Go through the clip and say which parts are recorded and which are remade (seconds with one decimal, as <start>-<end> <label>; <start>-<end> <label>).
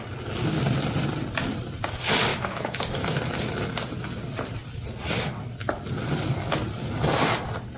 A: 0.0-2.3 recorded; 2.3-2.8 remade; 2.8-7.8 recorded